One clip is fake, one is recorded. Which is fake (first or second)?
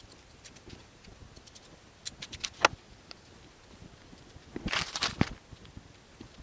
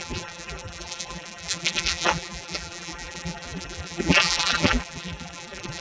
second